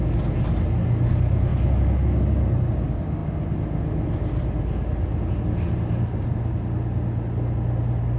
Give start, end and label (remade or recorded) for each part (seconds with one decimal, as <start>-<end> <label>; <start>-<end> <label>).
0.0-8.2 recorded

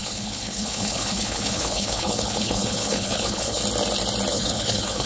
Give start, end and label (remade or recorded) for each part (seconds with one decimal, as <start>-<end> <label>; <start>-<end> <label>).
0.0-3.6 remade; 3.6-4.3 recorded; 4.3-5.1 remade

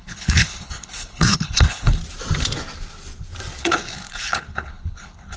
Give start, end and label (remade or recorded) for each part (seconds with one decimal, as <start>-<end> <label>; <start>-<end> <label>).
0.0-2.0 remade; 2.0-3.6 recorded; 3.6-5.4 remade

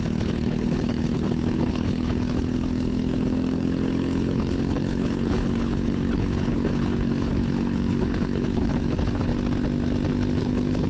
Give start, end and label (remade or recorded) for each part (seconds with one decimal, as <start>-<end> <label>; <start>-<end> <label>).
0.0-9.3 remade; 9.3-10.4 recorded; 10.4-10.9 remade

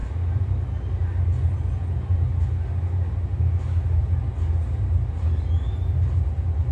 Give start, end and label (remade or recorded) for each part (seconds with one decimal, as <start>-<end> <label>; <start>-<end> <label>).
0.0-6.7 recorded

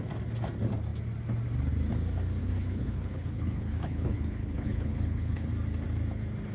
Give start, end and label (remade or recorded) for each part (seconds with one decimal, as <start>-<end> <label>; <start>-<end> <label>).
0.0-2.4 recorded; 2.4-5.5 remade; 5.5-6.5 recorded

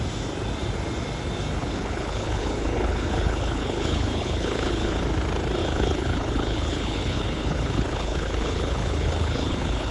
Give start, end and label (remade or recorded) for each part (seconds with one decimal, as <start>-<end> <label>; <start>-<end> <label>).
0.0-1.6 recorded; 1.6-5.0 remade; 5.0-5.6 recorded; 5.6-9.9 remade